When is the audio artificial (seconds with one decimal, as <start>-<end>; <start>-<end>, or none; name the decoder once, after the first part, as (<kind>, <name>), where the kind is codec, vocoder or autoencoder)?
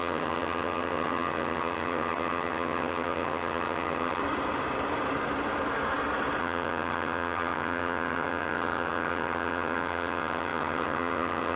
0.0-4.2 (vocoder, HiFi-GAN); 6.4-11.6